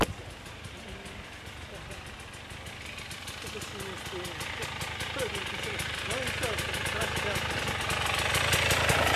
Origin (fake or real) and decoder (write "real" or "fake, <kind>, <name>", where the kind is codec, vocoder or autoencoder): real